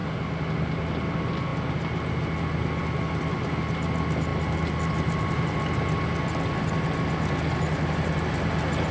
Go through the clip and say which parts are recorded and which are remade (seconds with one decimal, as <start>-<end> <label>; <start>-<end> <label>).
0.0-8.9 recorded